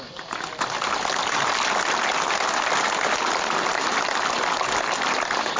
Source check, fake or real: real